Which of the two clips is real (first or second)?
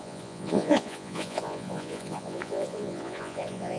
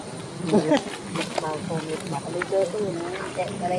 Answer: second